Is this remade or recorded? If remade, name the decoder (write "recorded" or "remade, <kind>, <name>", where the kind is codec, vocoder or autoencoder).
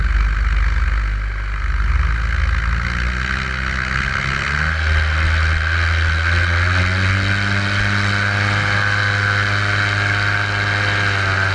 recorded